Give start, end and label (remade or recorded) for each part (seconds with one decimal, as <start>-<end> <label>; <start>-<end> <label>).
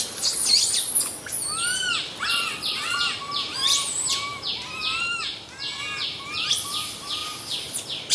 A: 0.0-2.3 recorded; 2.3-3.0 remade; 3.0-8.1 recorded